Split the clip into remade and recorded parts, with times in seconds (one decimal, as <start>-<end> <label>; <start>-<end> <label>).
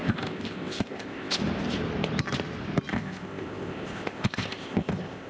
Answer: 0.0-1.4 remade; 1.4-2.9 recorded; 2.9-5.3 remade